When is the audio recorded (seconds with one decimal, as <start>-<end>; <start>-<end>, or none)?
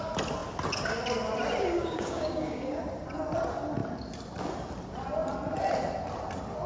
0.0-1.6; 2.8-6.7